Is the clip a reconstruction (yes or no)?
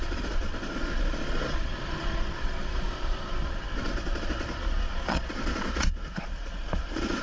yes